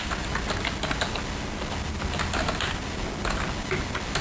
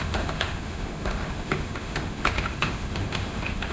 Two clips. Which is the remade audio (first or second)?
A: second